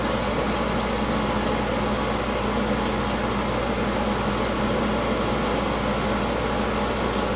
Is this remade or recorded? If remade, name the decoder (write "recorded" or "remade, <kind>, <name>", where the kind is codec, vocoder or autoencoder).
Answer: recorded